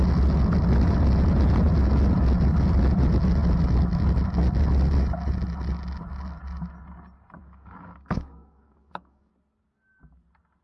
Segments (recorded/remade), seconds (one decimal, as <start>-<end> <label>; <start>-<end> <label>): 0.0-7.4 recorded; 7.4-9.3 remade; 9.3-10.6 recorded